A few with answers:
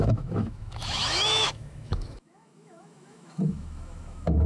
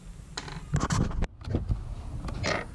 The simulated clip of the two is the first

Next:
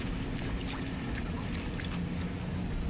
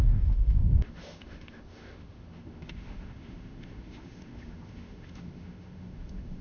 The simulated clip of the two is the second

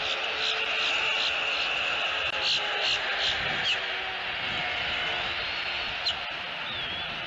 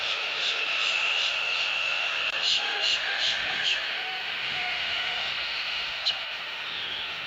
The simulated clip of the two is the second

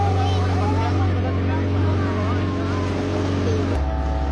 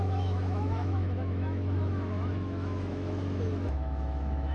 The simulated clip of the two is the second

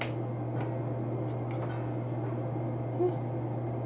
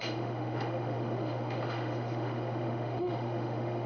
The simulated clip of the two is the second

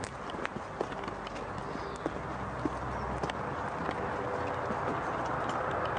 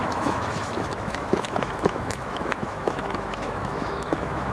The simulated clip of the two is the second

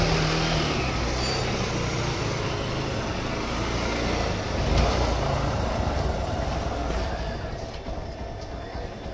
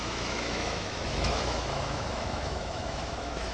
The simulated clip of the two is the second